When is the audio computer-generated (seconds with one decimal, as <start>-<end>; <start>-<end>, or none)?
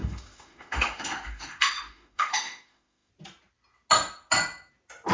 0.0-3.1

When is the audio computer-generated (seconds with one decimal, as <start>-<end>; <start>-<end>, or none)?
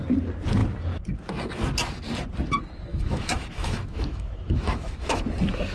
2.9-5.2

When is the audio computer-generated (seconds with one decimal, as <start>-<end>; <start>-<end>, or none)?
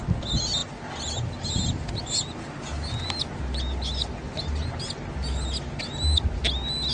none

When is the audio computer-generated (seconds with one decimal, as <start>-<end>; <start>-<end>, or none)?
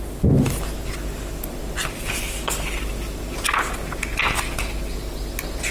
none